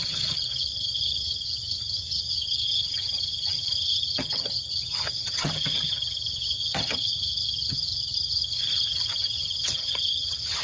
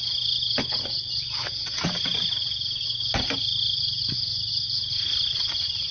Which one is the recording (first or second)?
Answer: second